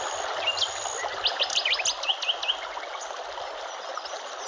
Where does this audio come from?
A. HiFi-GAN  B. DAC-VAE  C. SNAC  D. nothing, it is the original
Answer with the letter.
D